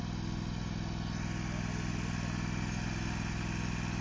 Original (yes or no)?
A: yes